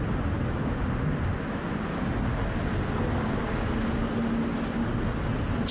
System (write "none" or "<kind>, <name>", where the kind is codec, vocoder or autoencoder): none